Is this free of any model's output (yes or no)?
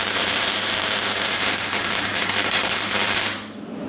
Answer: no